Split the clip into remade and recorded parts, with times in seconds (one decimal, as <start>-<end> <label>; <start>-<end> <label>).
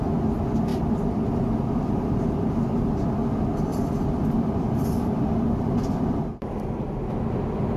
0.0-0.7 recorded; 0.7-2.2 remade; 2.2-3.7 recorded; 3.7-6.2 remade; 6.2-7.8 recorded